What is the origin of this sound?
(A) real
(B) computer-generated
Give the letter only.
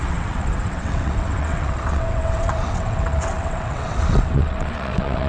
B